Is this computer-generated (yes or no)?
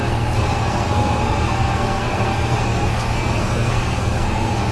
yes